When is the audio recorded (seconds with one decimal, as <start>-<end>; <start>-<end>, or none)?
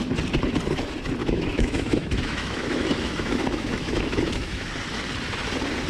0.0-1.2; 4.7-5.9